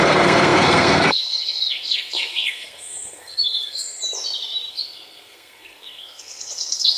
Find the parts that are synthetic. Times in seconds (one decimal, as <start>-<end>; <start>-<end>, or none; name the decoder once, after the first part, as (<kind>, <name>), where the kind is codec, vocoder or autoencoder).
0.0-4.0 (codec, SNAC); 4.7-7.0